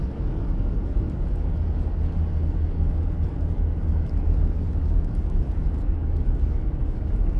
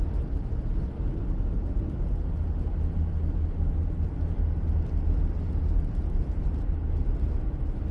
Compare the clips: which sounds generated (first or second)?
first